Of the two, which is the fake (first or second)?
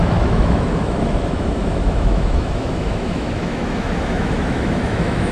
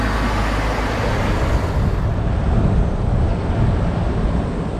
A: first